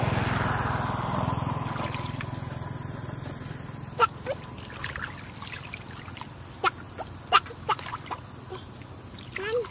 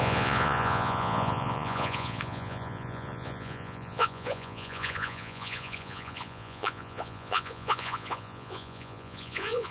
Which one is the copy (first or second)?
second